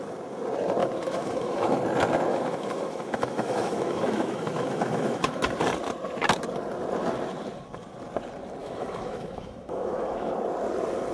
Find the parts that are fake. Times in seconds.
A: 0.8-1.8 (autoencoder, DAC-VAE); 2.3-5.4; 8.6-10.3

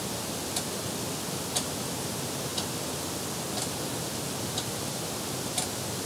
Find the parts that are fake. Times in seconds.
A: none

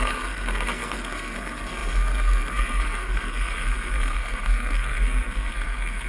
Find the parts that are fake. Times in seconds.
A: 0.0-6.1 (codec, SNAC)

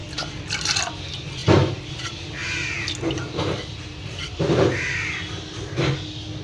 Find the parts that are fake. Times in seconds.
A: 0.0-0.9 (vocoder, BigVGAN v2); 1.4-1.9; 3.7-4.5